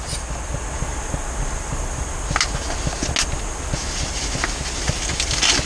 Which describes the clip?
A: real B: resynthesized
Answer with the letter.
A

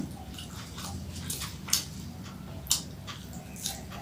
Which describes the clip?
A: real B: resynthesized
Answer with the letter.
A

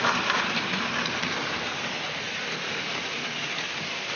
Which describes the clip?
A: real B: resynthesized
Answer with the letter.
A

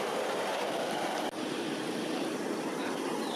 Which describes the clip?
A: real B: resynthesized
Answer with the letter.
A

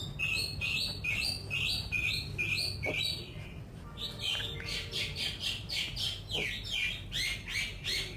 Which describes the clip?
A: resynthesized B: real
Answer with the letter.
B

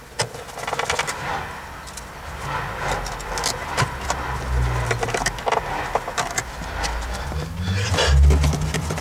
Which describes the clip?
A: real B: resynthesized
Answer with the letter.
A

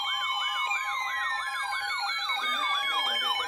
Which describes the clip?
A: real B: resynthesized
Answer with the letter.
B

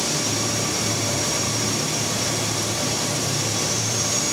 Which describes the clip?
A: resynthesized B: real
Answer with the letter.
A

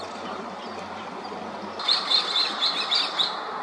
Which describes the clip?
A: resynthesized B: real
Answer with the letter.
B